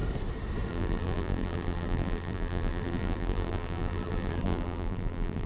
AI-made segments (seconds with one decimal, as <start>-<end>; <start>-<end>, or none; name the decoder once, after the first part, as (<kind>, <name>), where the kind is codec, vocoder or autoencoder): 0.7-5.5 (vocoder, BigVGAN v2)